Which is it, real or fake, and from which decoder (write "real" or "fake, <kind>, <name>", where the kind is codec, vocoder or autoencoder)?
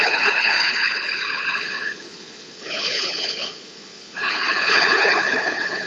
fake, codec, HILCodec